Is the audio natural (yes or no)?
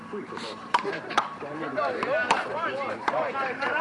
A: no